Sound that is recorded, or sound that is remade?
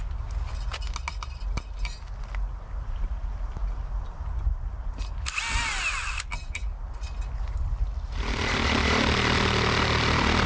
recorded